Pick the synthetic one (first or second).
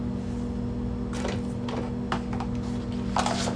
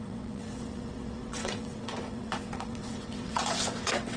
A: second